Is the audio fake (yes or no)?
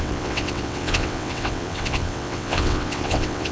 yes